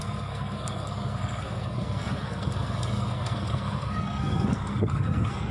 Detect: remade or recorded remade